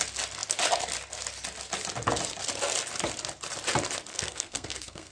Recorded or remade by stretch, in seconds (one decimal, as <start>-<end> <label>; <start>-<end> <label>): 0.0-4.1 recorded; 4.1-5.1 remade